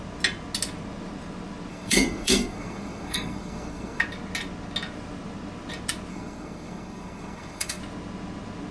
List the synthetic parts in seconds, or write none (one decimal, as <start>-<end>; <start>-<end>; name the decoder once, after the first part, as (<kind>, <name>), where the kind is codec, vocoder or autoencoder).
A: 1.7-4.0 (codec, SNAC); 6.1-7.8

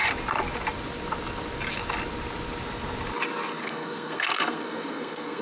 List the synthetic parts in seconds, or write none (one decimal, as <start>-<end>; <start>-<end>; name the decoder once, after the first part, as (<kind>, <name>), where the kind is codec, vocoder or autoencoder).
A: 3.6-5.4 (codec, SNAC)

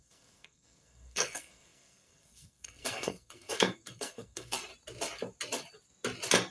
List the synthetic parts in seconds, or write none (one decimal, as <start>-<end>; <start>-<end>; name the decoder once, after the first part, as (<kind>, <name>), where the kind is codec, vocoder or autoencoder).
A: 0.0-4.7 (codec, SNAC)

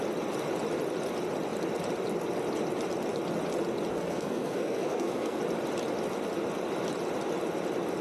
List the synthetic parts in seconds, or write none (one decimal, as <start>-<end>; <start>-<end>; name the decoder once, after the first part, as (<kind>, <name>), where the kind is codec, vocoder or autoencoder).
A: 3.9-5.4 (codec, SNAC)

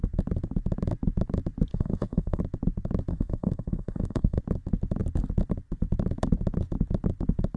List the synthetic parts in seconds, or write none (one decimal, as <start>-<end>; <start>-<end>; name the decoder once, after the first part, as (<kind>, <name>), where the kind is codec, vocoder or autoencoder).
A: 1.7-2.4 (codec, SNAC); 3.1-4.4